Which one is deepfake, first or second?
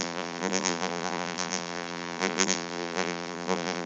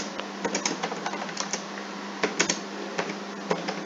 first